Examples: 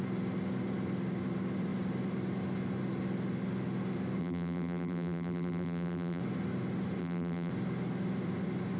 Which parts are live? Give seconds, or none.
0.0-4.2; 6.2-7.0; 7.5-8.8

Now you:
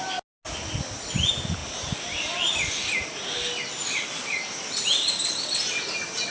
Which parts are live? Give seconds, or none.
0.0-6.3

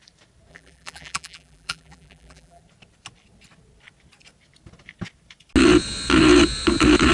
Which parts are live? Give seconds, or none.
0.0-0.5; 2.6-7.1

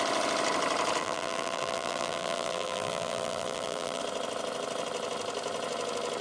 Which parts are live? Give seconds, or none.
0.0-1.0; 4.0-6.2

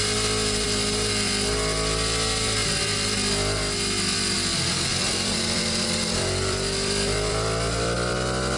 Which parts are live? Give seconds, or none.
0.0-4.9

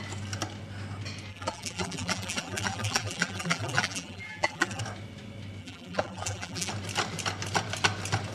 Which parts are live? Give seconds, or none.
0.0-1.3; 4.8-5.6; 6.7-8.3

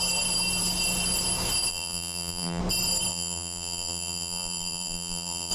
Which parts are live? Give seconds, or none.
0.0-1.7; 2.6-3.1

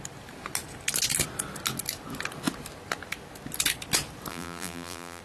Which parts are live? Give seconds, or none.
0.0-4.3